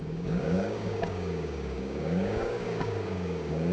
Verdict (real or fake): fake